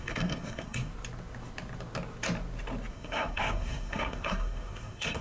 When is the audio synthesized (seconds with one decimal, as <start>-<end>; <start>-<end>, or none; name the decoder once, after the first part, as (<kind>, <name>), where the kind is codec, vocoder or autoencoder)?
0.0-0.9 (codec, SNAC); 2.9-5.2